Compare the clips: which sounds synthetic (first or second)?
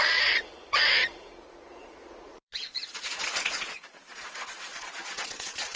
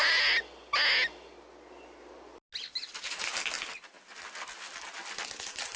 first